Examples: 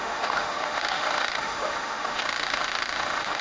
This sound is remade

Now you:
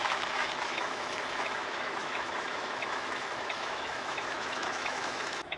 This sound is remade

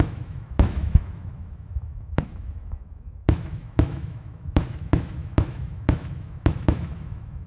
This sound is remade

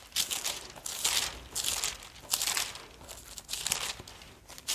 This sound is recorded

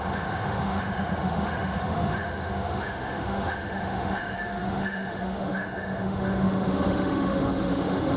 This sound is remade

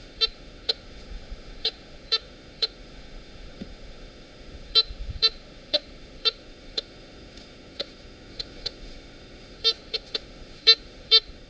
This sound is remade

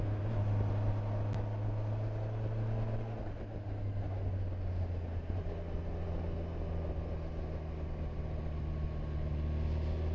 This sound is recorded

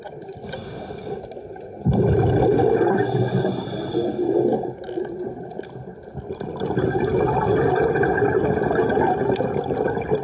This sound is recorded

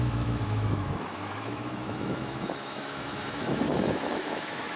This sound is remade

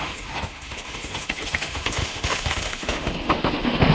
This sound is remade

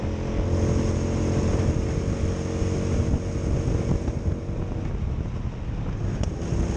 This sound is recorded